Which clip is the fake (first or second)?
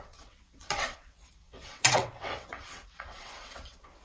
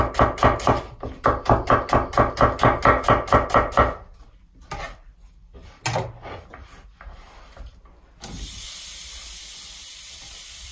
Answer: first